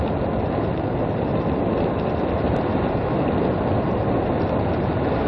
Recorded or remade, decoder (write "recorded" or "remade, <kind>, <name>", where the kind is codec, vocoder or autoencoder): recorded